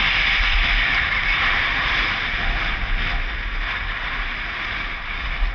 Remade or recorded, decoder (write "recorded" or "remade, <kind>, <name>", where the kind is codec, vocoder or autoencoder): recorded